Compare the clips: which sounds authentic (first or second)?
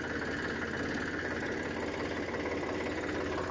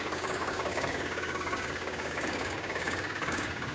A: first